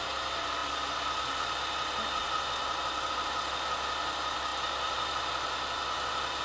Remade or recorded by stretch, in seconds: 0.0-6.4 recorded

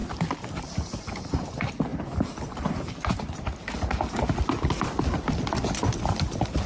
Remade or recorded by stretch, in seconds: 0.0-6.7 recorded

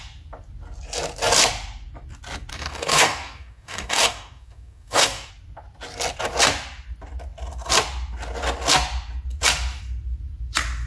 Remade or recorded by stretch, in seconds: 0.0-2.5 recorded; 2.5-5.3 remade; 5.3-10.9 recorded